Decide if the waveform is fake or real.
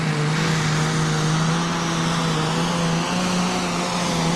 real